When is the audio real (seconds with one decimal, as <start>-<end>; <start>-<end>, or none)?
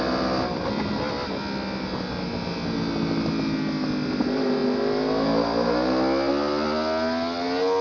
0.0-7.8